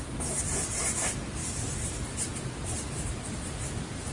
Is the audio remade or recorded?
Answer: recorded